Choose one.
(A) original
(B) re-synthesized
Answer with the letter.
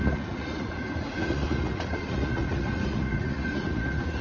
B